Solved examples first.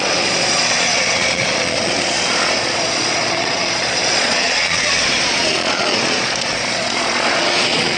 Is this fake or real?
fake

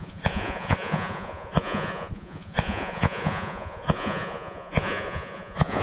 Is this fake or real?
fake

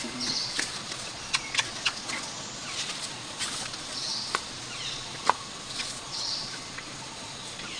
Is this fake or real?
fake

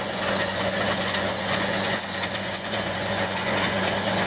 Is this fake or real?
fake